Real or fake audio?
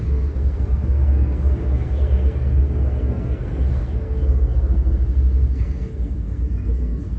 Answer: fake